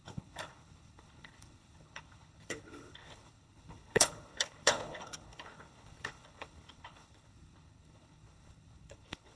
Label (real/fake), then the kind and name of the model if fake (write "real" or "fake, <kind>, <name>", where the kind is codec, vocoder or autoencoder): fake, codec, HILCodec